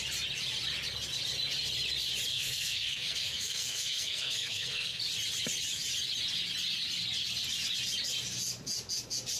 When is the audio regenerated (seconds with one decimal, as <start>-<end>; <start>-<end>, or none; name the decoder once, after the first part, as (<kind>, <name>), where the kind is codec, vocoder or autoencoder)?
2.3-5.0 (codec, SNAC)